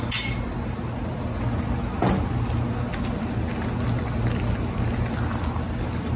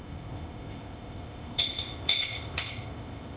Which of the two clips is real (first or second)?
first